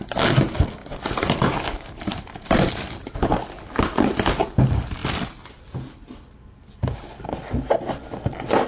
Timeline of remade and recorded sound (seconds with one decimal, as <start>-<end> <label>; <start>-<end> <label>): 0.0-0.8 recorded; 0.8-2.7 remade; 2.7-8.7 recorded